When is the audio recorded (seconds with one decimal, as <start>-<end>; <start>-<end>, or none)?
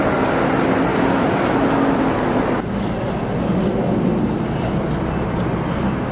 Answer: 0.0-6.1